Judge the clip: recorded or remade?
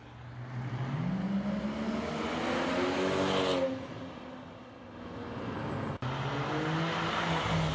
recorded